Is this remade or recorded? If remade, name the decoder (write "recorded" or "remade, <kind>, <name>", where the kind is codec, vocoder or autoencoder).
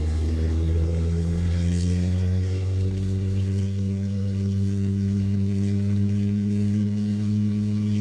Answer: remade, codec, SNAC